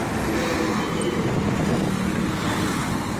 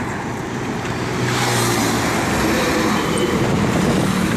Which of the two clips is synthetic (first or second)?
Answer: second